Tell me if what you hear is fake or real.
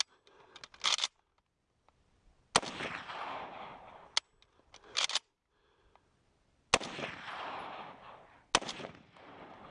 real